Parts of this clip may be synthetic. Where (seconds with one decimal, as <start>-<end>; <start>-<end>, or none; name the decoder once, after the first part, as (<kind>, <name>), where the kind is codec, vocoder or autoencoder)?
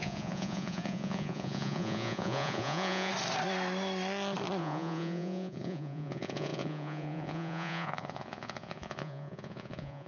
0.0-3.1 (vocoder, Vocos); 4.6-10.1